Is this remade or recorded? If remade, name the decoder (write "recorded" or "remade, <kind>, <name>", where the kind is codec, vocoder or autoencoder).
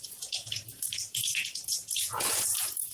remade, vocoder, Vocos